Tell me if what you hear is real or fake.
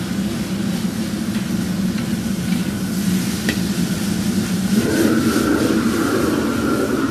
real